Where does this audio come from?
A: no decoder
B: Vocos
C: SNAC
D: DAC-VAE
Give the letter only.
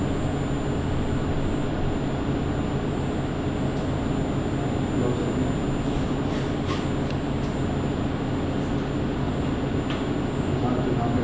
A